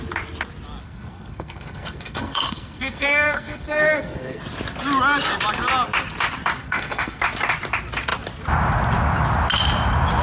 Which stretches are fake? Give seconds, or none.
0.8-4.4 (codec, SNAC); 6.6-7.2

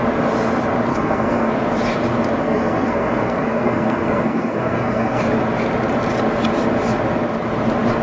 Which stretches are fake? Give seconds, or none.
0.9-1.5 (codec, SNAC); 2.4-5.2

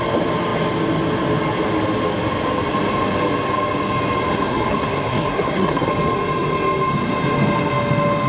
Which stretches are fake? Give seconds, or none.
4.3-5.9 (codec, SNAC)

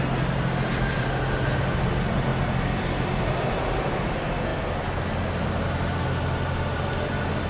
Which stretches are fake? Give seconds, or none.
none

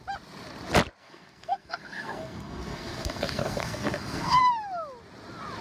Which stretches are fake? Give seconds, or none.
1.0-4.4 (codec, SNAC)

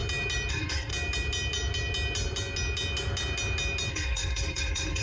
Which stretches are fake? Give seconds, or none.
0.5-0.9 (codec, SNAC); 3.9-5.0

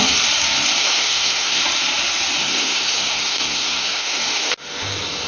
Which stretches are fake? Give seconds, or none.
0.8-1.6 (codec, SNAC); 2.4-4.5

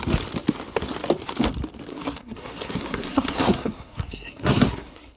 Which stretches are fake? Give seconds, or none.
1.9-5.2 (codec, SNAC)